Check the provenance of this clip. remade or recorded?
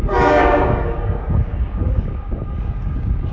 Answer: remade